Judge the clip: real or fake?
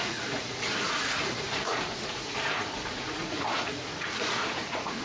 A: fake